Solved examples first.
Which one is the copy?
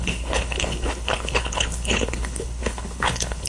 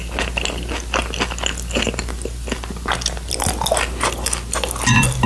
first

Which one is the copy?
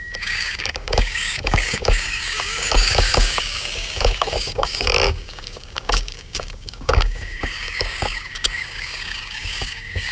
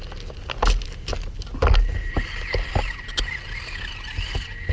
first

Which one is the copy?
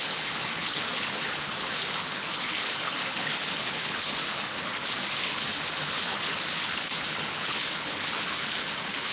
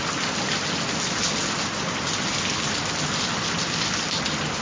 first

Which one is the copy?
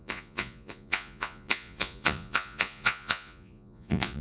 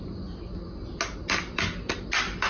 first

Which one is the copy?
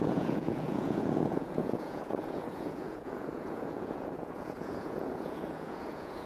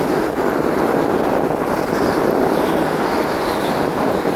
first